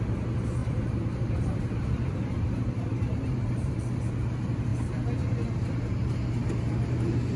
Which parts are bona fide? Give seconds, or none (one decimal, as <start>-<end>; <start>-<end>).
0.0-0.6; 3.7-7.4